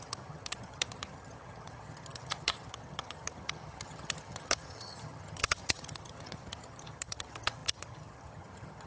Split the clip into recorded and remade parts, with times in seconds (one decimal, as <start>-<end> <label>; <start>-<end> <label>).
0.0-8.9 remade